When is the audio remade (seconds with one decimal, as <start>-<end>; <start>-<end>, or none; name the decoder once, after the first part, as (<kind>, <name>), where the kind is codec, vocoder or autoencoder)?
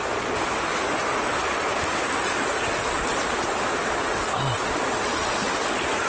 none